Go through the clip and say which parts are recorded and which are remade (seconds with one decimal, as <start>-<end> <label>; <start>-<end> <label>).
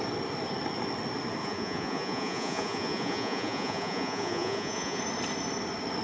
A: 0.0-1.4 recorded; 1.4-5.0 remade; 5.0-6.0 recorded